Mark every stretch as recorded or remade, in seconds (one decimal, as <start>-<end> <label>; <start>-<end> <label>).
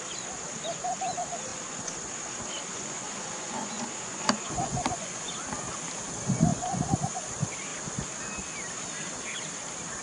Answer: 0.0-1.5 recorded; 1.5-2.0 remade; 2.0-2.7 recorded; 2.7-5.3 remade; 5.3-6.5 recorded; 6.5-7.2 remade; 7.2-10.0 recorded